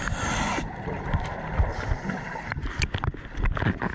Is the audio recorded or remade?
recorded